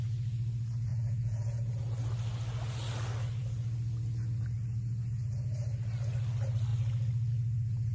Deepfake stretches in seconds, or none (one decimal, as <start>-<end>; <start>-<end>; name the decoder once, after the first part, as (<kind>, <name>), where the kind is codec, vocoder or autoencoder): 0.9-1.8 (vocoder, Vocos)